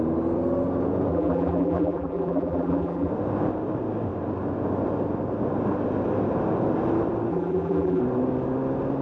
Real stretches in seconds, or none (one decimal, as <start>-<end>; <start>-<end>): 0.0-1.1; 3.1-7.3; 8.0-9.0